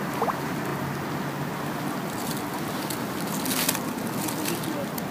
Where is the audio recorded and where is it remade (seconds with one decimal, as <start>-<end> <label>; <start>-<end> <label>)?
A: 0.0-5.1 recorded